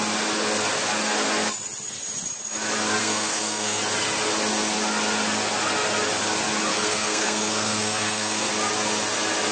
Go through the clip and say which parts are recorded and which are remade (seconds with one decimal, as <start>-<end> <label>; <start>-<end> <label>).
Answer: 0.0-3.0 recorded; 3.0-3.8 remade; 3.8-6.7 recorded; 6.7-8.5 remade; 8.5-9.5 recorded